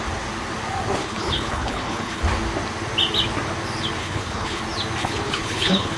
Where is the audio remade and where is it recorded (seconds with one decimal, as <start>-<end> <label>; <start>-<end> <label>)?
0.0-1.0 recorded; 1.0-2.2 remade; 2.2-4.0 recorded; 4.0-4.6 remade; 4.6-5.0 recorded; 5.0-6.0 remade